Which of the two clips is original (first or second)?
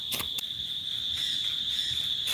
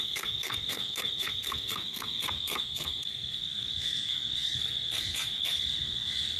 first